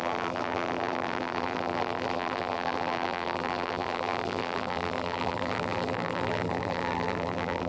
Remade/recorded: remade